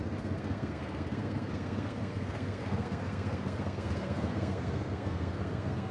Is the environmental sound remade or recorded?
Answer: remade